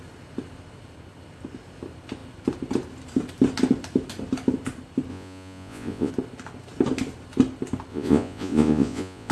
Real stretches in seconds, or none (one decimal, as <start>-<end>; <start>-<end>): 0.0-5.1; 6.1-7.9